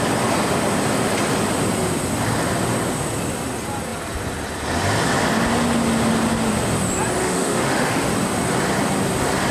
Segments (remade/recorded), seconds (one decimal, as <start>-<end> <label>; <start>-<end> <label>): 0.0-7.2 recorded; 7.2-8.1 remade; 8.1-9.5 recorded